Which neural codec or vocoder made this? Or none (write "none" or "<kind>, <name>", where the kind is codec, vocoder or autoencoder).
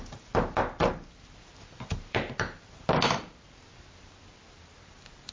none